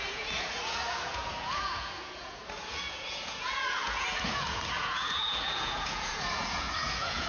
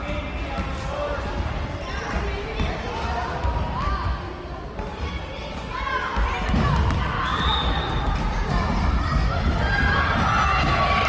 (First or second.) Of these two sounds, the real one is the second